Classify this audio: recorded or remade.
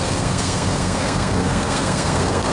remade